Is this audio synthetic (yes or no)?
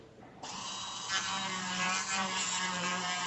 yes